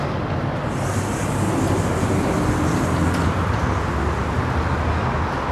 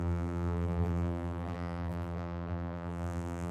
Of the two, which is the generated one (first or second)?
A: second